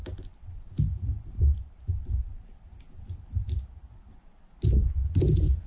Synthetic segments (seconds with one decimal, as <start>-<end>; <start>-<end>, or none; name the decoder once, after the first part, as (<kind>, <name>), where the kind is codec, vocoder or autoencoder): 0.0-3.4 (vocoder, BigVGAN v2)